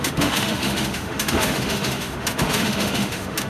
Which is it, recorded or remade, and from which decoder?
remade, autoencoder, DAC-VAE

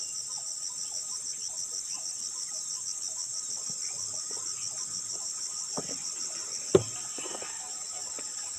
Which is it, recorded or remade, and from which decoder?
recorded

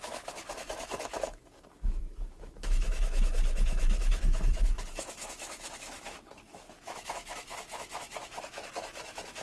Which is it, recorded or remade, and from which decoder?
remade, autoencoder, DAC-VAE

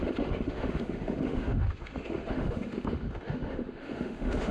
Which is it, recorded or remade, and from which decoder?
remade, autoencoder, DAC-VAE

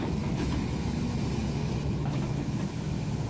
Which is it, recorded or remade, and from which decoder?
remade, autoencoder, DAC-VAE